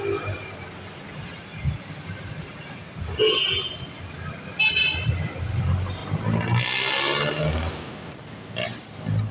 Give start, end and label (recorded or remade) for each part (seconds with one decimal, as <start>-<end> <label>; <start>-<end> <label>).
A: 0.0-9.3 recorded